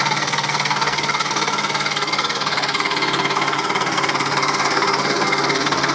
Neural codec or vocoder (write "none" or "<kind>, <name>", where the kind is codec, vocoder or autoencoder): codec, SNAC